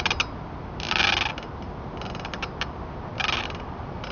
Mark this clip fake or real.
real